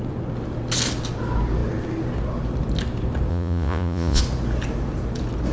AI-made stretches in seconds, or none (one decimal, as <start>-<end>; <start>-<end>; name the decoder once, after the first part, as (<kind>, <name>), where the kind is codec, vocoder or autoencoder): 3.3-4.2 (vocoder, Vocos)